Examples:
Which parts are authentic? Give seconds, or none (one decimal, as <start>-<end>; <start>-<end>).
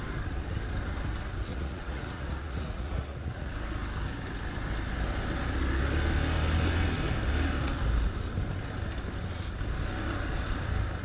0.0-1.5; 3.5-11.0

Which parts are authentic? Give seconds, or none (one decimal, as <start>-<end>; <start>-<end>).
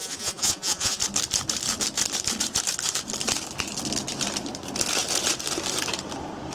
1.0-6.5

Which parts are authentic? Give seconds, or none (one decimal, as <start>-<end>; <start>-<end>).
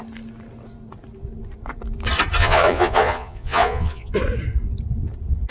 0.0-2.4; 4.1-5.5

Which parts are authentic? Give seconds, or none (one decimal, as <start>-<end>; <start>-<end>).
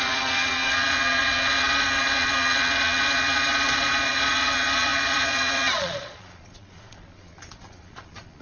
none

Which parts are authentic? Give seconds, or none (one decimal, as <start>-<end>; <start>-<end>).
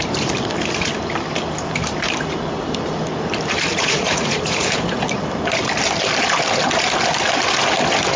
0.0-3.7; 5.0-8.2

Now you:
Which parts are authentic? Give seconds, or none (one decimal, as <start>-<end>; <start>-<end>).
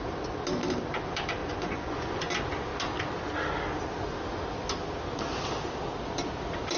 0.0-1.4; 2.3-6.8